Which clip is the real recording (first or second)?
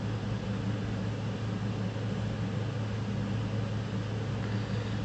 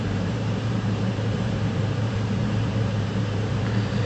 first